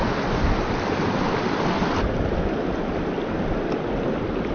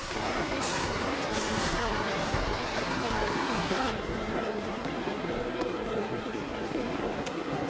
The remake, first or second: second